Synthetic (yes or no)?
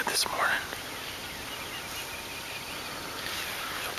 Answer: no